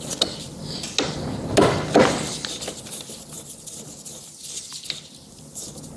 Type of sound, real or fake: real